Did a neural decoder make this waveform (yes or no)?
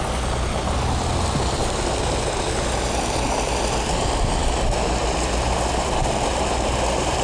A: no